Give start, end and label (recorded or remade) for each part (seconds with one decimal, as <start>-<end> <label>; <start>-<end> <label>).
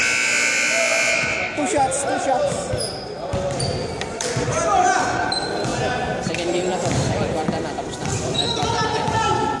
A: 0.0-4.0 recorded; 4.0-5.7 remade; 5.7-6.3 recorded; 6.3-6.7 remade; 6.7-7.6 recorded; 7.6-9.6 remade